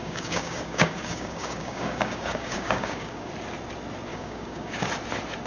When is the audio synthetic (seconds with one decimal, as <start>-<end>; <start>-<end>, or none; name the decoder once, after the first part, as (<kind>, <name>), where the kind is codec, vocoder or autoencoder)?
0.0-3.3 (codec, DAC); 4.1-4.9